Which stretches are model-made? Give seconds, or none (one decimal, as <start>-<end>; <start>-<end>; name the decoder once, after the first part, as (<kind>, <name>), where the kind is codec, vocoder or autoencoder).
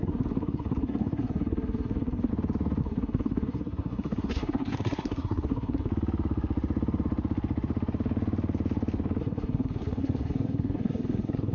0.0-2.3 (codec, SNAC); 2.8-5.9; 9.2-11.5